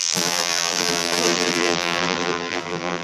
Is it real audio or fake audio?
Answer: fake